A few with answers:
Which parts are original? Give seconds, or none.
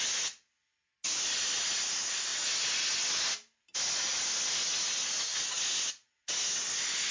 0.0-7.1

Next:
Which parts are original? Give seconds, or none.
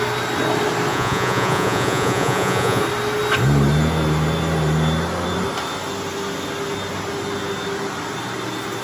0.0-0.9; 2.8-8.8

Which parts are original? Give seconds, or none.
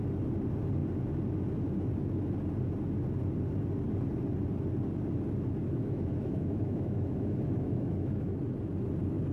0.0-5.6; 8.4-9.3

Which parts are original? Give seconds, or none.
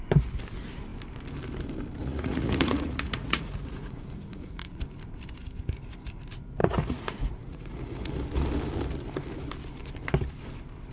0.0-2.0; 4.8-6.6; 8.1-10.9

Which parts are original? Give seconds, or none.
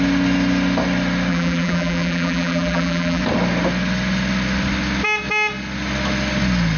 0.0-1.3; 3.2-6.8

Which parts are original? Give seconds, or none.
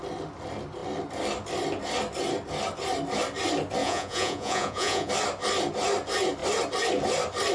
0.0-3.8; 5.1-7.5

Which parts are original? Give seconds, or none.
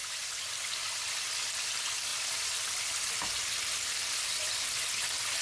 1.1-2.1; 4.6-5.4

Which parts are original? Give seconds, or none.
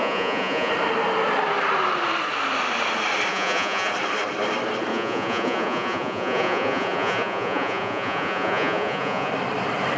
0.7-3.3; 3.9-4.9; 9.3-10.0